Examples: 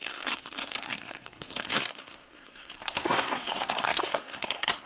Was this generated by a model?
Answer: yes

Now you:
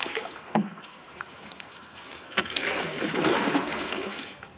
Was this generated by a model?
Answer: yes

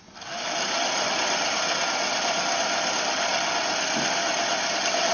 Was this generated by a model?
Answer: no